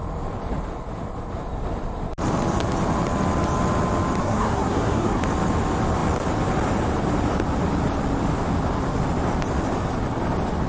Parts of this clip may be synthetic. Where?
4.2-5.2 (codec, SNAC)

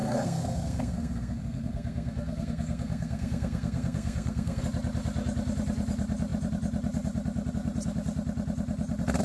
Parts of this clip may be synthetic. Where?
0.0-4.6 (codec, SNAC)

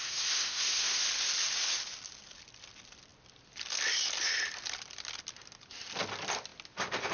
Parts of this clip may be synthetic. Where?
0.0-1.0 (codec, SNAC)

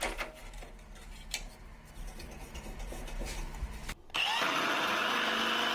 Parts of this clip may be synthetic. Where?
none

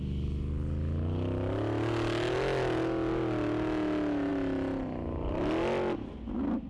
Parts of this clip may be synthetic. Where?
none

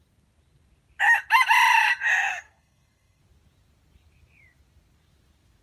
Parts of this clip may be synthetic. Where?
2.3-3.2 (codec, SNAC)

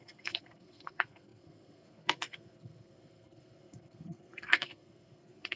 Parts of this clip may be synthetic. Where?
0.0-5.6 (codec, SNAC)